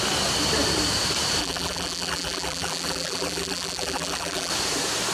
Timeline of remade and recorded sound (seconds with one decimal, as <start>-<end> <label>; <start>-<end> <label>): 0.0-1.4 recorded; 1.4-4.5 remade; 4.5-5.1 recorded